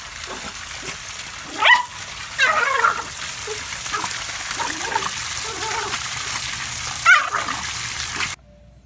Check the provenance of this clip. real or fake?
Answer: real